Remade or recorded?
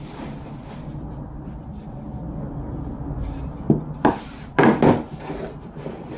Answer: recorded